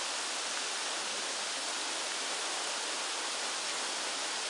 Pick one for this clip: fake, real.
real